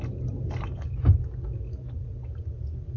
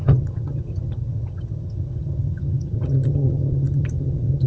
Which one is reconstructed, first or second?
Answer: second